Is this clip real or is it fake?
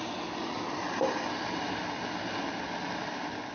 real